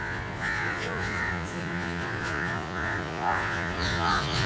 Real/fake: fake